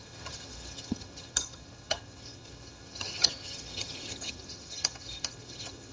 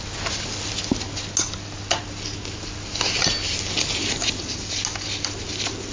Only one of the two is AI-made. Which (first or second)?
first